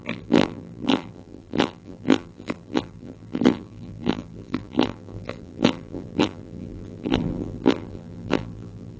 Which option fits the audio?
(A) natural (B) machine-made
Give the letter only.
B